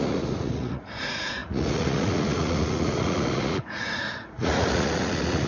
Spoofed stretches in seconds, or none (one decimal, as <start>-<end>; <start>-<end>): 0.0-5.5

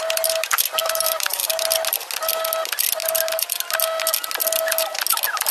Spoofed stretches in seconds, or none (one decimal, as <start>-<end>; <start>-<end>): 0.8-1.4

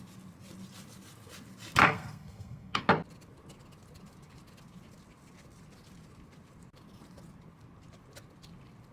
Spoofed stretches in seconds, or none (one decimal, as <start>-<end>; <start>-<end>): 1.8-2.8

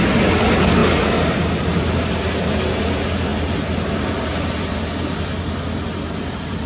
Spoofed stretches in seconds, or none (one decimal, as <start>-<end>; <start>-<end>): none

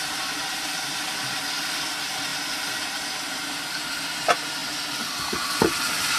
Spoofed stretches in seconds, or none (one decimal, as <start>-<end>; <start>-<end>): none

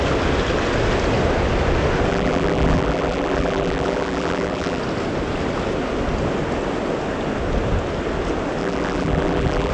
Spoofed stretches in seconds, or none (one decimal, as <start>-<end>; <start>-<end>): 2.1-4.8; 8.6-9.7

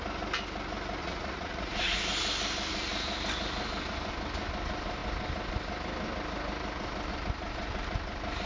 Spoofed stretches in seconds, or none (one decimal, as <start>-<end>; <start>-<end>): 1.0-2.0

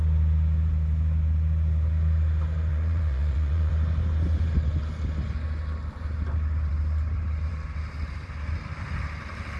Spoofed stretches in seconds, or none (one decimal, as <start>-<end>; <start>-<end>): 2.7-3.7